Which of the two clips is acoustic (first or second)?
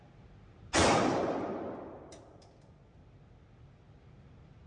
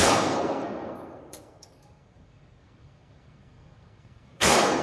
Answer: first